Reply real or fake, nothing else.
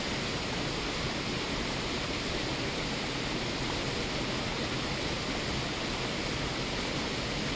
real